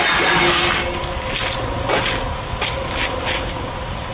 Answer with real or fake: real